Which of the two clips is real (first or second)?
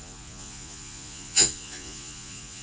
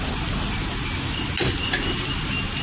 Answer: second